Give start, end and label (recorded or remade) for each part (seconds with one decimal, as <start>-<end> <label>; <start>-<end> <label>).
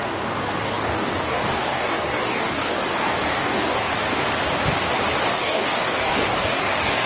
0.0-3.9 remade; 3.9-5.3 recorded; 5.3-7.1 remade